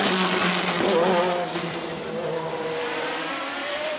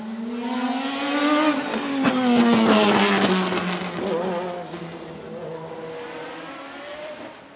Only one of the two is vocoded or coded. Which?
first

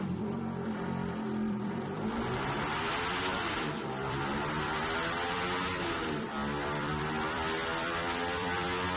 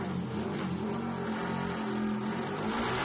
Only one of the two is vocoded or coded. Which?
first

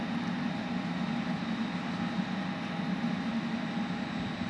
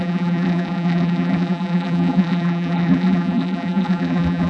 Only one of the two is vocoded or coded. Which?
second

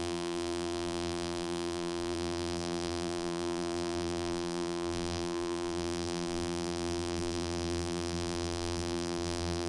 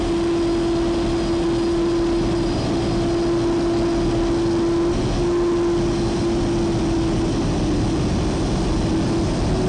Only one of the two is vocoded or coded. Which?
first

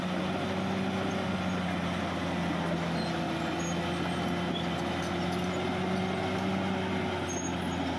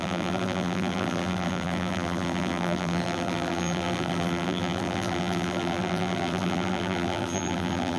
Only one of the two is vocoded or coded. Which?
second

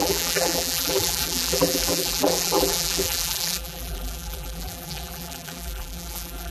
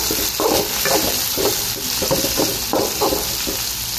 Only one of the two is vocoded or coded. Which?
first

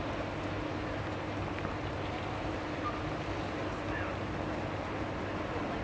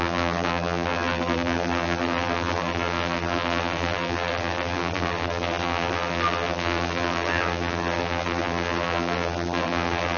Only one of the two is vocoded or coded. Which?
second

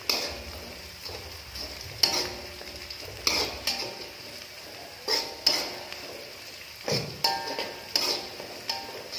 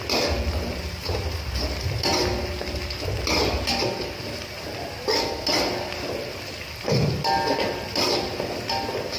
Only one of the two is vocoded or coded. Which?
second